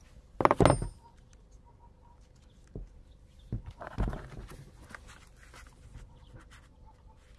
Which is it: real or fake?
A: real